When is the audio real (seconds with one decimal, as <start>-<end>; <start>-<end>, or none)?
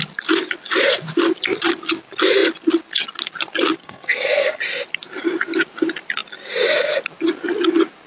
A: 0.0-3.8; 4.6-8.1